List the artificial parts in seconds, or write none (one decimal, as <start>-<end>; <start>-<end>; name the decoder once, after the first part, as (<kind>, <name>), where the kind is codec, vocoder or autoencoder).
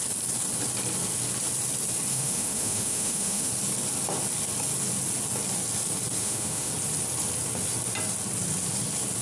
2.1-3.5 (autoencoder, DAC-VAE); 6.2-6.7